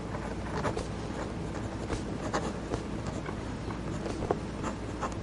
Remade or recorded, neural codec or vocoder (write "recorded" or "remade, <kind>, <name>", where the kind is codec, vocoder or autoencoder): recorded